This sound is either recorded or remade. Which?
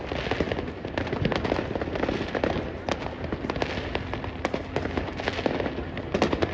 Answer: recorded